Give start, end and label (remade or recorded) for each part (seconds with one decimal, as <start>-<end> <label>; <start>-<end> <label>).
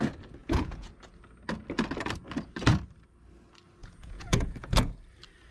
0.0-0.4 recorded; 0.4-0.9 remade; 0.9-3.8 recorded; 3.8-4.9 remade; 4.9-5.5 recorded